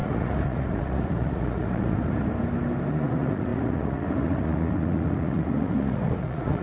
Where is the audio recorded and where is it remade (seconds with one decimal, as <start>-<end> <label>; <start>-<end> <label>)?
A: 0.0-2.3 remade; 2.3-2.9 recorded; 2.9-6.6 remade